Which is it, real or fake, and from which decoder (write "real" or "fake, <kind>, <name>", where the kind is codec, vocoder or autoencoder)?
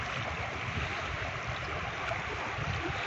real